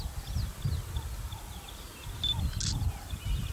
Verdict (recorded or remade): recorded